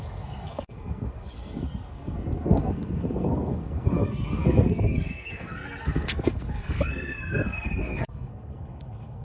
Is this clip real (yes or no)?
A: no